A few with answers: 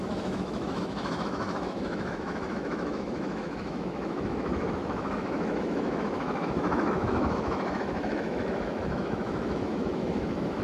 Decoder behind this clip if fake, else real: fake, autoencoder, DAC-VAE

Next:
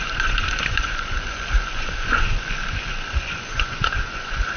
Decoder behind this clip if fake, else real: fake, vocoder, Vocos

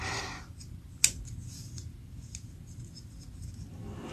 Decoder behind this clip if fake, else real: real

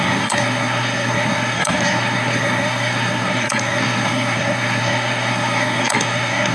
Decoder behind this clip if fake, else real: fake, codec, SNAC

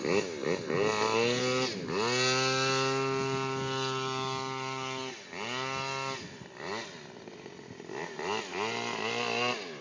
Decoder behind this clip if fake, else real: real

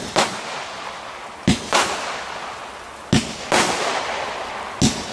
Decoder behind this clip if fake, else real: real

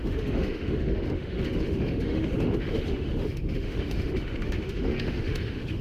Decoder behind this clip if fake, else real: fake, autoencoder, DAC-VAE